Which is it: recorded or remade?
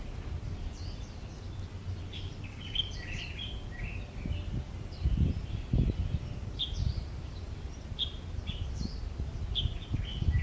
recorded